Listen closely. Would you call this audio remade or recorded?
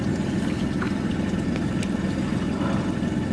recorded